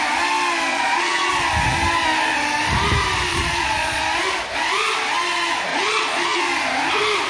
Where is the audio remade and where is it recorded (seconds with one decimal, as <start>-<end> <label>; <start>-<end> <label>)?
0.0-0.7 recorded; 0.7-1.3 remade; 1.3-3.3 recorded; 3.3-4.0 remade; 4.0-5.7 recorded; 5.7-6.4 remade; 6.4-7.3 recorded